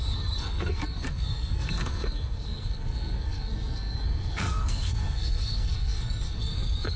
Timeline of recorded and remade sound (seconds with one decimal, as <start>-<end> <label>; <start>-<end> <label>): 0.0-7.0 remade